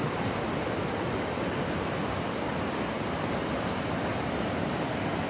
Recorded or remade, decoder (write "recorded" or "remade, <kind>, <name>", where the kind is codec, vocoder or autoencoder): recorded